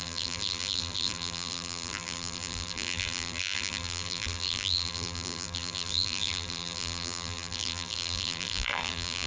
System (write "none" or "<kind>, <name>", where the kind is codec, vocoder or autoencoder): vocoder, BigVGAN v2